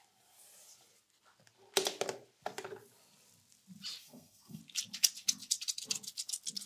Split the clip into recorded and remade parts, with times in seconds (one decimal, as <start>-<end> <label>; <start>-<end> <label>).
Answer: 0.0-4.0 recorded; 4.0-4.6 remade; 4.6-6.7 recorded